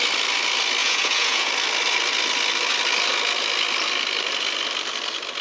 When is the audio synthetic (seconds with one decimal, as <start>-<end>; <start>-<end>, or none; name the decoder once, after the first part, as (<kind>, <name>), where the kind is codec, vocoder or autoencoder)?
0.8-1.5 (vocoder, Vocos)